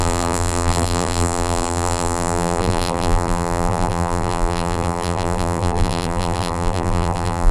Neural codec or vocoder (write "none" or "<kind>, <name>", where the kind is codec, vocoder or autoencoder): vocoder, BigVGAN v2